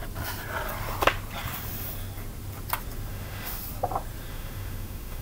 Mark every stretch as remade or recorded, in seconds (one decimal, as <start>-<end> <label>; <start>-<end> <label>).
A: 0.0-3.1 recorded; 3.1-3.6 remade; 3.6-4.3 recorded; 4.3-5.2 remade